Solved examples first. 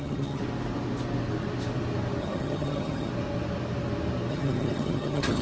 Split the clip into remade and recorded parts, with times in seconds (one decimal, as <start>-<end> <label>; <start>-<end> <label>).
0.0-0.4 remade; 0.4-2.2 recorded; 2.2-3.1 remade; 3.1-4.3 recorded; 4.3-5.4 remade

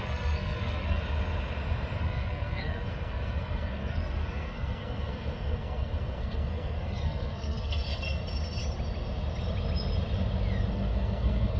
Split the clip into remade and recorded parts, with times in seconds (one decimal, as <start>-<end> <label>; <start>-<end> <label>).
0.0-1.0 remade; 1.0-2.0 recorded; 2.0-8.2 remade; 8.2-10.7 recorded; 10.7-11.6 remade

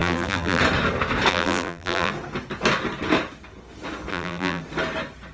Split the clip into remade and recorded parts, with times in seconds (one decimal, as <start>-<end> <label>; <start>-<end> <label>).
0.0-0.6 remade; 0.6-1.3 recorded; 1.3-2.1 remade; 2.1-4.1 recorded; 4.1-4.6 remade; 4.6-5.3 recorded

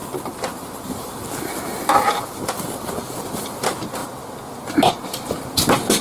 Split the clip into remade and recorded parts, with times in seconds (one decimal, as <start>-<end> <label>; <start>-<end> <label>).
0.0-6.0 recorded

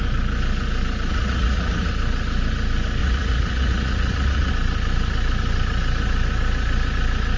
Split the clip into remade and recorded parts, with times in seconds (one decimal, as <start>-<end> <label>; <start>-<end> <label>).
0.0-1.1 recorded; 1.1-1.9 remade; 1.9-3.0 recorded; 3.0-4.5 remade; 4.5-7.4 recorded

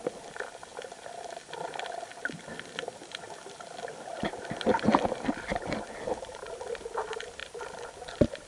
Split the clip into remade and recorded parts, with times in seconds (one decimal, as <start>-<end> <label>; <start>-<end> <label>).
0.0-4.7 recorded; 4.7-5.9 remade; 5.9-7.4 recorded; 7.4-8.5 remade

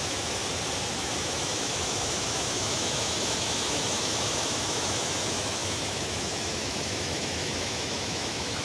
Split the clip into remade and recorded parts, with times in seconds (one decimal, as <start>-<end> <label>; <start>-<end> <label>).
0.0-0.4 remade; 0.4-1.0 recorded; 1.0-8.6 remade

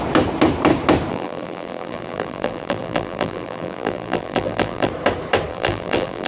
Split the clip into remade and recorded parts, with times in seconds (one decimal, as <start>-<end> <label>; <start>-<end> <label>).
0.0-1.1 recorded; 1.1-4.9 remade; 4.9-5.5 recorded; 5.5-6.3 remade